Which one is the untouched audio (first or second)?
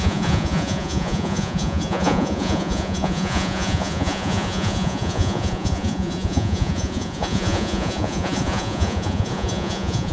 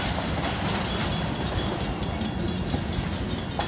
second